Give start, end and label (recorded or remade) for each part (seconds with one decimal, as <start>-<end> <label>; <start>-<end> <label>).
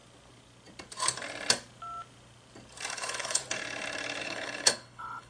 0.0-2.9 recorded; 2.9-3.4 remade; 3.4-4.2 recorded; 4.2-5.3 remade